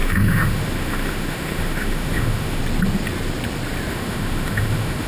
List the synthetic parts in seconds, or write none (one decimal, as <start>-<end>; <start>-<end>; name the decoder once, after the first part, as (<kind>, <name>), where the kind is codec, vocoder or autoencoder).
0.0-2.6 (autoencoder, DAC-VAE); 3.9-5.1